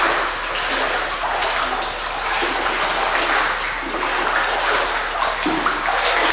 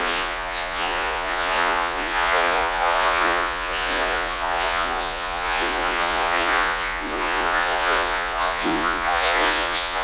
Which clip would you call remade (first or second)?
second